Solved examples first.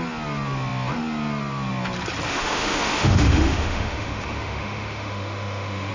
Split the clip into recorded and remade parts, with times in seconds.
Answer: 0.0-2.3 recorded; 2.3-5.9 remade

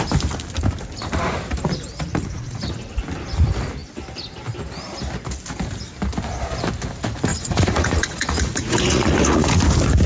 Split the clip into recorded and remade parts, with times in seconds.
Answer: 0.0-2.1 recorded; 2.1-2.7 remade; 2.7-7.3 recorded; 7.3-9.6 remade; 9.6-10.1 recorded

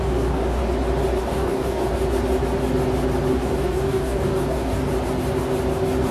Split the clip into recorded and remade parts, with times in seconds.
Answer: 0.0-0.6 remade; 0.6-1.2 recorded; 1.2-1.9 remade; 1.9-3.3 recorded; 3.3-4.8 remade; 4.8-6.1 recorded